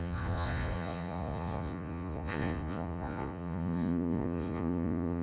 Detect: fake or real fake